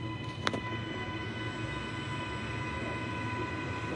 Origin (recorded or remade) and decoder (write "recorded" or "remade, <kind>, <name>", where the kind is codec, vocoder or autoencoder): recorded